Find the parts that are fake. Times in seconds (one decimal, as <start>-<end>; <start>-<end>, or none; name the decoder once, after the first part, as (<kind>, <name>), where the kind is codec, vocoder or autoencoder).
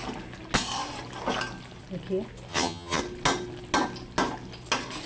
2.5-3.0 (vocoder, HiFi-GAN)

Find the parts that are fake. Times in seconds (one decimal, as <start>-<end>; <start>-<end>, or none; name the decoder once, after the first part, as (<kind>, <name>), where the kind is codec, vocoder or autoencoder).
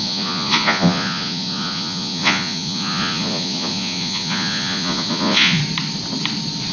0.0-5.6 (vocoder, Vocos)